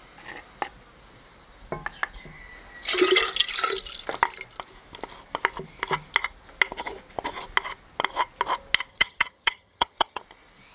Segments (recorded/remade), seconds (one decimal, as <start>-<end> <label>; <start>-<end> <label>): 0.0-8.9 recorded; 8.9-10.2 remade; 10.2-10.7 recorded